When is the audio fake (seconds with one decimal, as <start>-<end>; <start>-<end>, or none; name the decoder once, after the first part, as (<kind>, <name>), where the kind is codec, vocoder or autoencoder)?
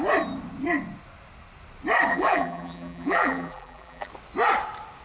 2.1-4.1 (vocoder, BigVGAN v2)